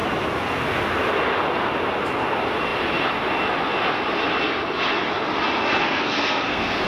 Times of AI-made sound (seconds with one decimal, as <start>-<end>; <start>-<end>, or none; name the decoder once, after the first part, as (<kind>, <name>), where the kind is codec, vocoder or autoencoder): 5.8-6.9 (codec, SNAC)